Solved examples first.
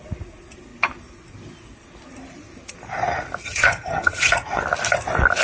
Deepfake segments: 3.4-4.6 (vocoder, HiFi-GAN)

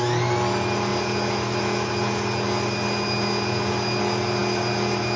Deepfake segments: none